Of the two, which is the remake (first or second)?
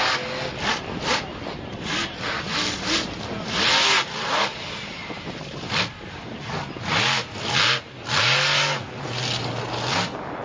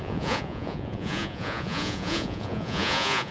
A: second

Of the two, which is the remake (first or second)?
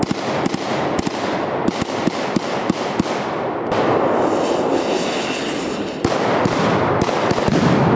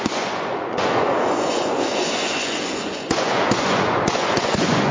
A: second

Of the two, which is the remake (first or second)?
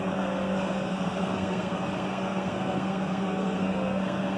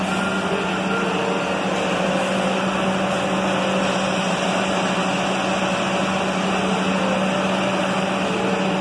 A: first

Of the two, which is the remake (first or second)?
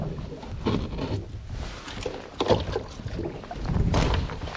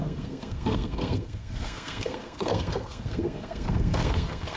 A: second